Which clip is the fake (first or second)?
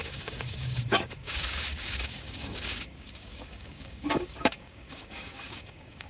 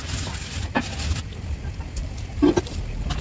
first